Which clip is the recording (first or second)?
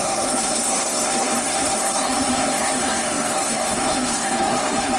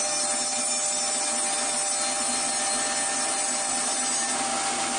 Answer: second